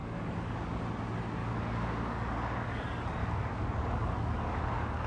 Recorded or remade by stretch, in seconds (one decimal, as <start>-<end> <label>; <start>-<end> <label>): 0.0-0.8 remade; 0.8-1.4 recorded; 1.4-2.8 remade; 2.8-3.2 recorded; 3.2-5.1 remade